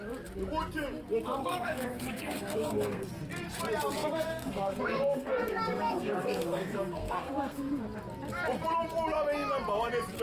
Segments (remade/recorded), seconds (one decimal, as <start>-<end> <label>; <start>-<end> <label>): 0.0-1.4 recorded; 1.4-3.1 remade; 3.1-4.0 recorded; 4.0-7.8 remade; 7.8-10.2 recorded